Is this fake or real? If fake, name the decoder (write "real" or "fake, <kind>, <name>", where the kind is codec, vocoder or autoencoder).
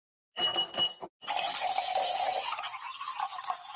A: real